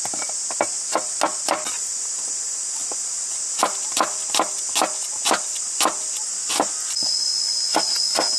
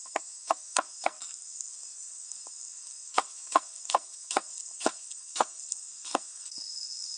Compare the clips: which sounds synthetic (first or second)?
second